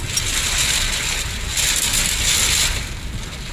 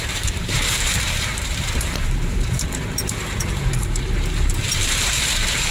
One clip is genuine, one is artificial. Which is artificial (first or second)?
second